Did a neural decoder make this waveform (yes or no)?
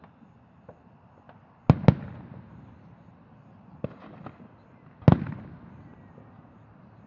no